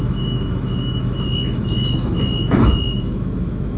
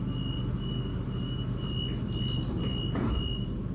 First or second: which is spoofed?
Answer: first